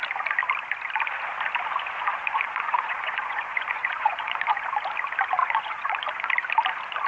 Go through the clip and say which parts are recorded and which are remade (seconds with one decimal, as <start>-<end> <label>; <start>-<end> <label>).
0.0-2.1 recorded; 2.1-4.5 remade; 4.5-5.4 recorded; 5.4-6.2 remade; 6.2-7.1 recorded